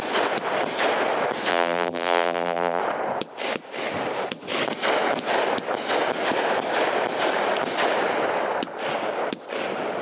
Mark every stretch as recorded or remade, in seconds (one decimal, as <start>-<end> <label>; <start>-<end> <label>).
0.0-1.5 recorded; 1.5-2.8 remade; 2.8-10.0 recorded